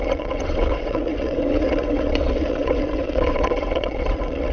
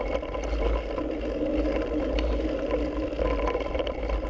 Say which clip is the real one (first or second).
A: second